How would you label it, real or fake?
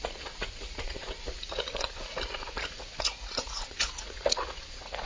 fake